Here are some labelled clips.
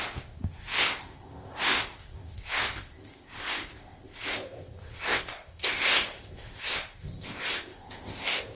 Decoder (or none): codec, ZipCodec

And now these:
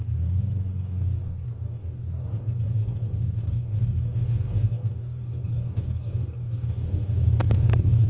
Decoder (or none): codec, DAC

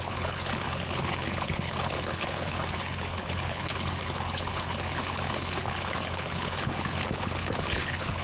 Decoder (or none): codec, HILCodec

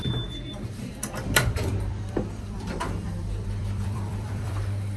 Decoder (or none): vocoder, BigVGAN v2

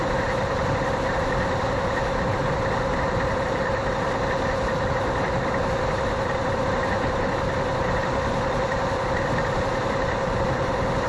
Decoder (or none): none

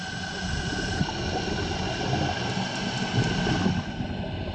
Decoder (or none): none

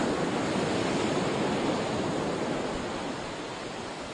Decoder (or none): none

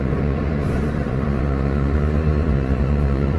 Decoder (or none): vocoder, Vocos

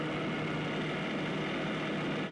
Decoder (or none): none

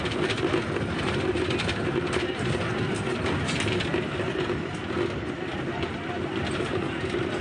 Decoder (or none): none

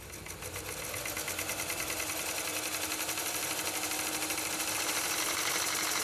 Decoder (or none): none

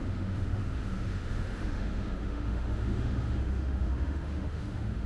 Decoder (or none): autoencoder, DAC-VAE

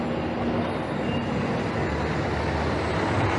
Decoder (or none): none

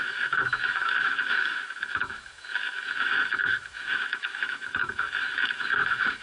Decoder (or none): autoencoder, DAC-VAE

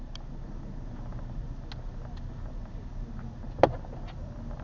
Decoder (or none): none